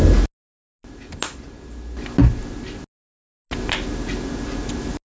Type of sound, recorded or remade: recorded